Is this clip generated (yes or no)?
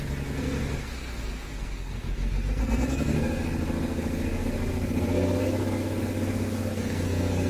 yes